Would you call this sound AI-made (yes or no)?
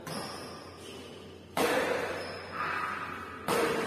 no